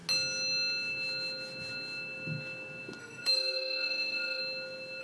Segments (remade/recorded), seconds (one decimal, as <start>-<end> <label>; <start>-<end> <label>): 0.0-3.0 recorded; 3.0-4.4 remade; 4.4-5.0 recorded